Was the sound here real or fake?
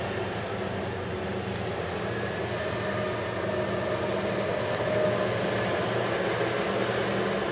real